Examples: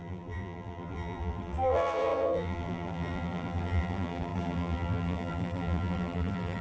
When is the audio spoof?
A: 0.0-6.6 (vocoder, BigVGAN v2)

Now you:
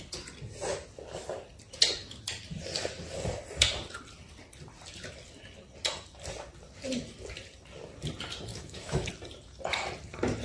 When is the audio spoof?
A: 8.5-9.1 (autoencoder, DAC-VAE)

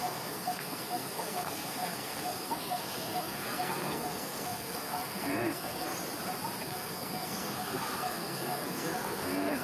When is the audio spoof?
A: 0.0-5.9 (codec, SNAC); 6.6-9.6

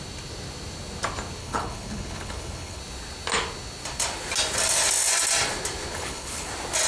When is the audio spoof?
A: 1.4-2.8 (codec, HILCodec); 5.9-6.5

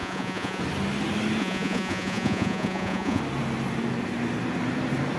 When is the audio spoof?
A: 0.0-0.6 (vocoder, Vocos); 1.4-3.2

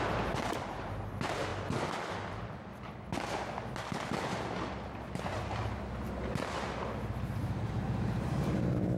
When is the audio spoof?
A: 7.4-9.0 (vocoder, BigVGAN v2)

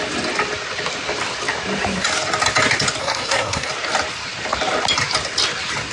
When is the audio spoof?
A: 3.0-3.7 (codec, SNAC)

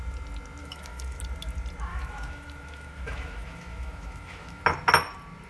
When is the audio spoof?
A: 0.6-1.2 (autoencoder, DAC-VAE); 1.9-4.6